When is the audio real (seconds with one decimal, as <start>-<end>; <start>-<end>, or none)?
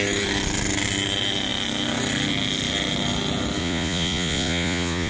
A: 0.0-3.6